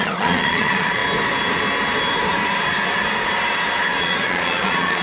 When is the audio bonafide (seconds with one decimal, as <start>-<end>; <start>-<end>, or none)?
1.0-4.0